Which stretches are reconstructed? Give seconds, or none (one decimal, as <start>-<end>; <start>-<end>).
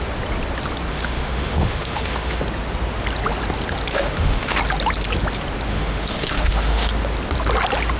0.9-2.4; 3.9-4.6; 5.7-6.9